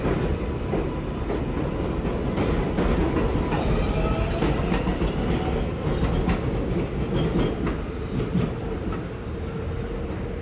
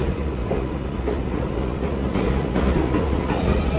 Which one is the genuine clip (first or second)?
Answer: first